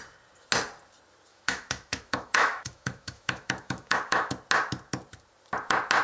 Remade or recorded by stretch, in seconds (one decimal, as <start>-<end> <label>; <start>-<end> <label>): 0.0-1.3 recorded; 1.3-4.3 remade; 4.3-6.0 recorded